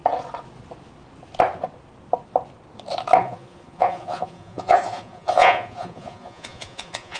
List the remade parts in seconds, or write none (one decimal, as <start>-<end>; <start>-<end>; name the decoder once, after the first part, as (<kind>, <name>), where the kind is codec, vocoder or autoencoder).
3.2-7.2 (vocoder, Vocos)